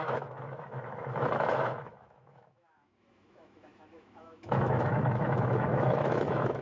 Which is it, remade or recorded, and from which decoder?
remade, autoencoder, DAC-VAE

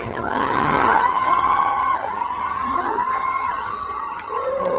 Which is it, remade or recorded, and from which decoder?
remade, vocoder, HiFi-GAN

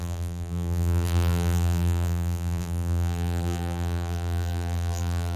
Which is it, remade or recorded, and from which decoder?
remade, vocoder, BigVGAN v2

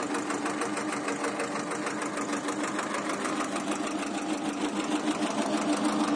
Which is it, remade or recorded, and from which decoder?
recorded